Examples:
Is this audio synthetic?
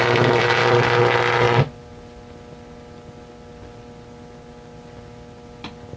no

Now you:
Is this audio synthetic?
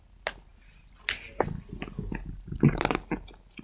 no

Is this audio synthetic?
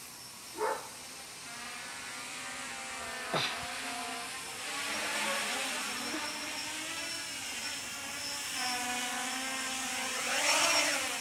no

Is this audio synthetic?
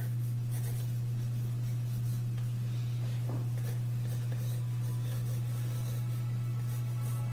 no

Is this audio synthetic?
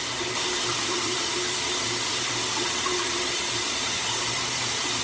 yes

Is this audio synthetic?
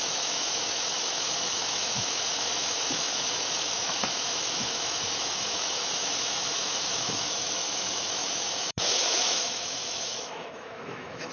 yes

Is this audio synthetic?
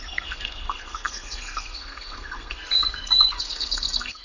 yes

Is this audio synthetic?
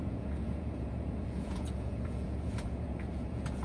yes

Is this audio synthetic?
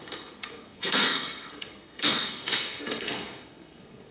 yes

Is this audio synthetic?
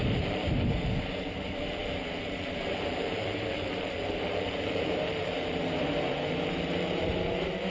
yes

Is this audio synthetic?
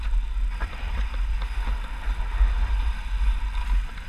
no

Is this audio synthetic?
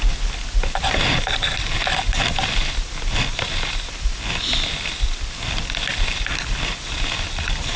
no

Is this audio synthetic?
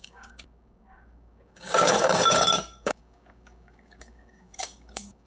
yes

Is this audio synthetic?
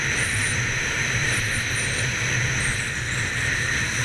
no